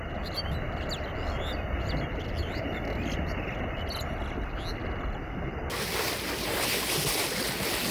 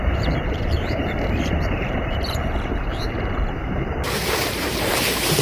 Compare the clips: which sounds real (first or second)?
first